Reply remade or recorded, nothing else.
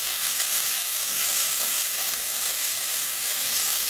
remade